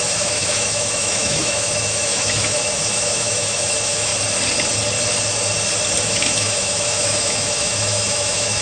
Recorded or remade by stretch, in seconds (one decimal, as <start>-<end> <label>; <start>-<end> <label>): 0.0-4.1 remade; 4.1-6.0 recorded; 6.0-8.6 remade